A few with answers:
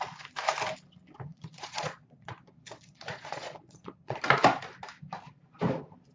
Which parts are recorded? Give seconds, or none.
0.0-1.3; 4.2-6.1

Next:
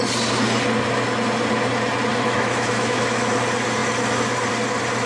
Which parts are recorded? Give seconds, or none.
0.0-2.1; 3.3-5.1